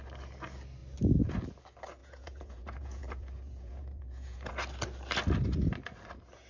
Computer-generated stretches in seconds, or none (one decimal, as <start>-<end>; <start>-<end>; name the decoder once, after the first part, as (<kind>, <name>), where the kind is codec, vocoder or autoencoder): 2.0-4.5 (vocoder, Vocos)